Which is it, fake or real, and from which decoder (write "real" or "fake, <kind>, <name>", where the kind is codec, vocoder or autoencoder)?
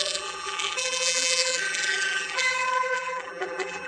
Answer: fake, vocoder, BigVGAN v2